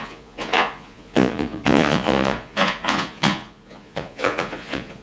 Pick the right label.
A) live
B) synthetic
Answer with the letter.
B